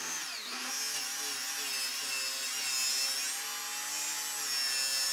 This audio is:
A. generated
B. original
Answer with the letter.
B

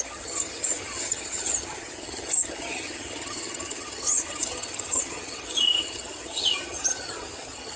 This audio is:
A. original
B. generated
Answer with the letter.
B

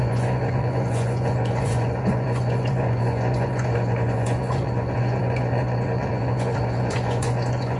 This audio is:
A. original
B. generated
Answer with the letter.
B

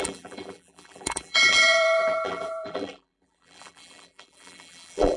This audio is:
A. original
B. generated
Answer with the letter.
B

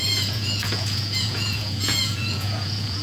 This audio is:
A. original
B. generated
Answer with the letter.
B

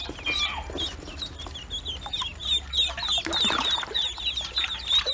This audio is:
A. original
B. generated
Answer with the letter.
A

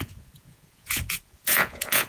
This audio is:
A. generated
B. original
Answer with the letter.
A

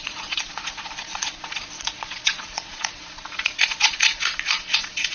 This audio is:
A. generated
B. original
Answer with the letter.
A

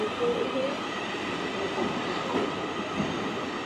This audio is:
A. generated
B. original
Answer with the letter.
B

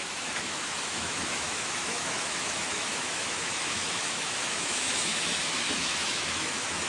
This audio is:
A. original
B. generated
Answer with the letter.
B